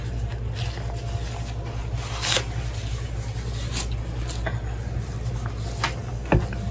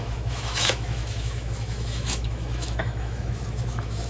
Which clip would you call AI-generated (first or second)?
second